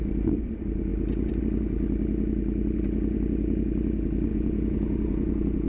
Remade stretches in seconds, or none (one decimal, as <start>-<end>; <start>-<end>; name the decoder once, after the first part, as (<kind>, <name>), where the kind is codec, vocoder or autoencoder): 4.3-5.7 (vocoder, Vocos)